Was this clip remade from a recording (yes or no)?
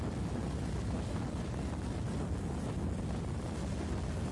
no